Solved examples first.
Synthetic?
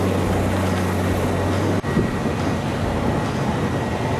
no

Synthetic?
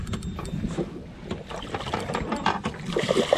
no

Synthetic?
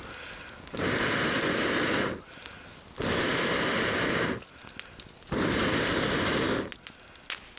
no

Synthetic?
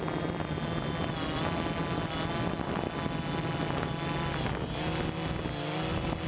no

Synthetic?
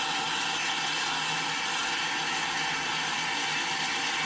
no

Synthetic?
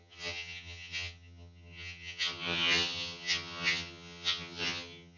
yes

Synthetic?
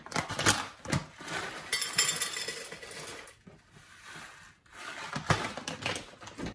no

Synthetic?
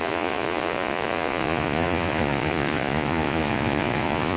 yes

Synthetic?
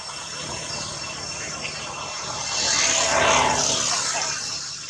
no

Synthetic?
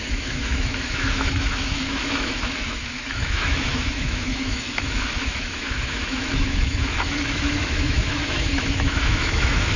yes